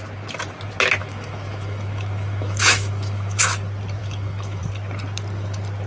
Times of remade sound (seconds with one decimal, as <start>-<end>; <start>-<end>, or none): 1.0-3.4; 4.0-4.6